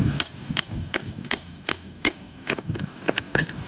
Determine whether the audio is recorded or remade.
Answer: remade